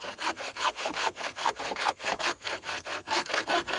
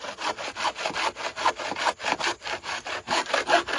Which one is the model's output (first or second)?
first